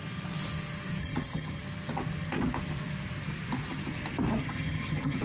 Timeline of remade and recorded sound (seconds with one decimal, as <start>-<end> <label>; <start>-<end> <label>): 0.0-1.0 recorded; 1.0-1.6 remade; 1.6-4.4 recorded; 4.4-5.2 remade